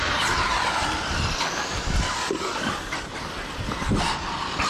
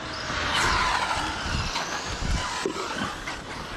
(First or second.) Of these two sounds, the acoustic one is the second